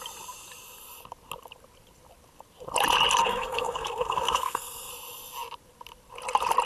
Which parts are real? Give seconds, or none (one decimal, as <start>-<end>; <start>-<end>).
0.0-3.2; 4.9-6.7